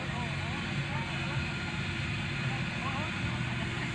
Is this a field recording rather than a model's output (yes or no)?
yes